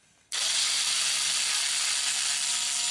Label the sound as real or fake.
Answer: real